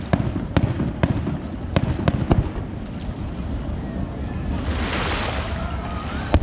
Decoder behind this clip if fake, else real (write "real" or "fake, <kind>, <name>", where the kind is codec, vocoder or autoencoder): real